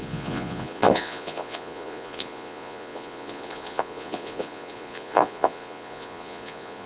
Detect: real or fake fake